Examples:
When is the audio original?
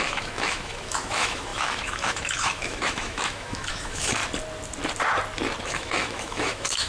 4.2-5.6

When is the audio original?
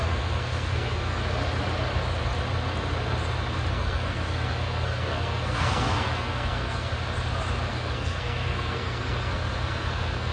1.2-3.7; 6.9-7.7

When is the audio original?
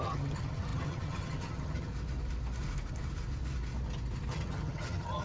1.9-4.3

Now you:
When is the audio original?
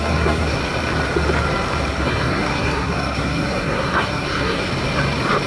0.6-1.9; 4.7-5.5